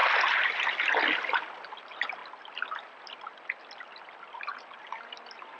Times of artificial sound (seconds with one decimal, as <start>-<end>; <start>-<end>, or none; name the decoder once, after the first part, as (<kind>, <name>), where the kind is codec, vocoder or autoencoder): none